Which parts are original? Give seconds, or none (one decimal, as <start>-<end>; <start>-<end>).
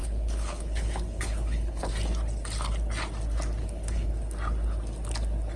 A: 1.9-3.6; 4.1-5.6